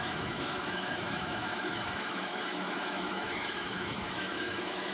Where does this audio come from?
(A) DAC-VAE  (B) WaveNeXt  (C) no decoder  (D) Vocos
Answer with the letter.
A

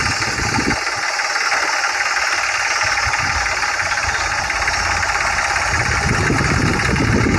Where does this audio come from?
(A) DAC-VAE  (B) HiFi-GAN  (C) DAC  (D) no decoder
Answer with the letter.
D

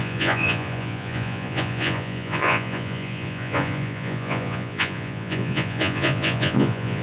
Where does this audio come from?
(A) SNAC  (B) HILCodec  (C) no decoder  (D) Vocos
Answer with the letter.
D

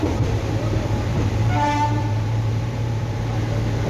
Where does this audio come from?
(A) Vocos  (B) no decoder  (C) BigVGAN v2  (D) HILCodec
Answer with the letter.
C